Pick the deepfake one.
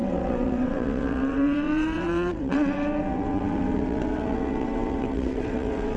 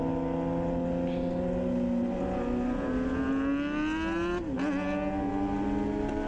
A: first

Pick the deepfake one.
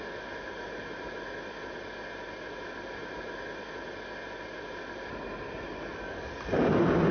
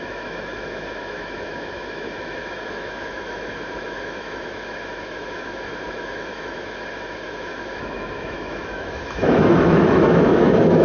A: second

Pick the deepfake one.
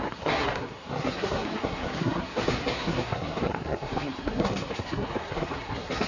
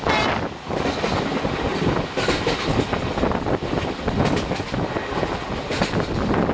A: first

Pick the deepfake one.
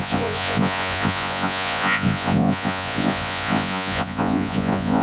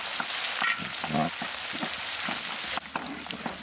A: first